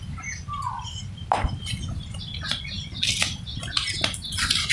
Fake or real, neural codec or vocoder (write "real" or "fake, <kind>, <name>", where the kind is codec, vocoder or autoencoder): real